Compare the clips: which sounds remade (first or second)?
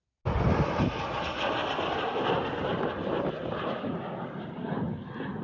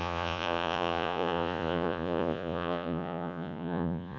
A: second